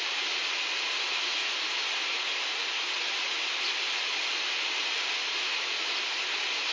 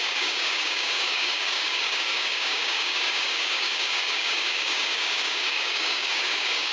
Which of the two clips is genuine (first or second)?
first